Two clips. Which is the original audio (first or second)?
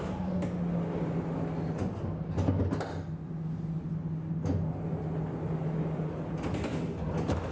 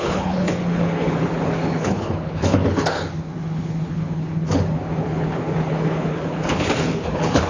first